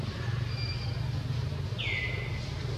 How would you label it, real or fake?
real